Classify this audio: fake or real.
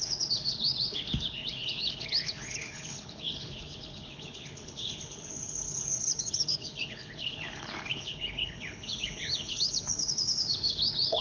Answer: fake